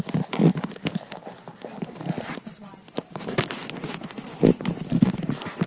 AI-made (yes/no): no